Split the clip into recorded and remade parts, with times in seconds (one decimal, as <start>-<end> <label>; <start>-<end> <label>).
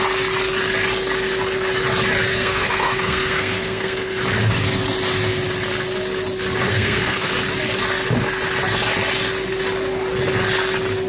0.0-2.3 recorded; 2.3-4.2 remade; 4.2-6.7 recorded; 6.7-7.3 remade; 7.3-11.1 recorded